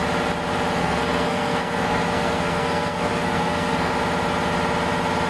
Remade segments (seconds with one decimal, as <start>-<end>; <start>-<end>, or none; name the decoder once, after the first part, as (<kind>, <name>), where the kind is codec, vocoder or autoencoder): 0.8-3.9 (codec, SNAC)